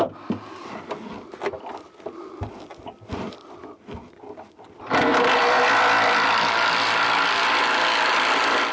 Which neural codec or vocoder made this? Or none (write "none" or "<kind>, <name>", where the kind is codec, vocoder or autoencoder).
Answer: none